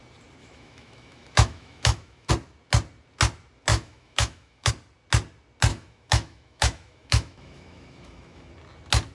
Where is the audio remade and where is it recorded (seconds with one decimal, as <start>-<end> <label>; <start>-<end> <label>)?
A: 0.0-0.4 recorded; 0.4-2.3 remade; 2.3-3.7 recorded; 3.7-4.7 remade; 4.7-5.7 recorded; 5.7-8.5 remade; 8.5-9.1 recorded